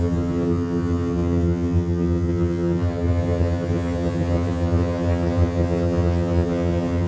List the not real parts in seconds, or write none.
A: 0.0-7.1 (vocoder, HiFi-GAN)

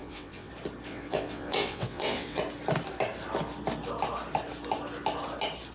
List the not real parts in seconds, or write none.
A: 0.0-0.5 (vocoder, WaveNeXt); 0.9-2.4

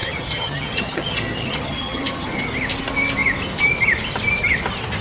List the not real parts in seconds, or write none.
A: 0.0-2.4 (vocoder, HiFi-GAN)